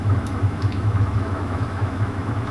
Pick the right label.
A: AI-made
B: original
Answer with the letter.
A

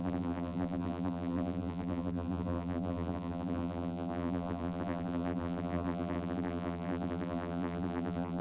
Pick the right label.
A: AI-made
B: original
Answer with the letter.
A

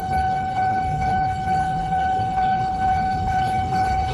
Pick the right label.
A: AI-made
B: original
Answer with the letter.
A